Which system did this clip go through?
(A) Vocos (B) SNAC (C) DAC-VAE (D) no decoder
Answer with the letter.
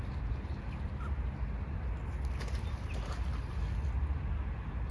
D